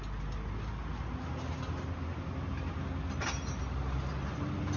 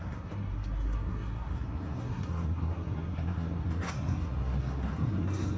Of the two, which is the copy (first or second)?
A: second